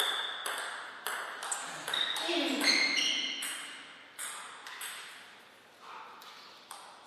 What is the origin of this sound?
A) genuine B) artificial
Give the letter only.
A